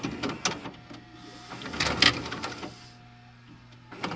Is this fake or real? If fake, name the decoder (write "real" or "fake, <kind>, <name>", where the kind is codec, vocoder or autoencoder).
real